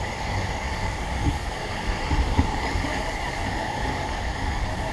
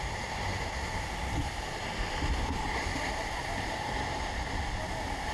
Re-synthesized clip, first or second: first